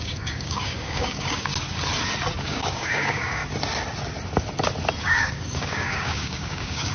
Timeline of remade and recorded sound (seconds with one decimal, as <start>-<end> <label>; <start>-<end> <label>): 0.0-1.5 remade; 1.5-2.4 recorded; 2.4-3.4 remade; 3.4-5.0 recorded; 5.0-6.9 remade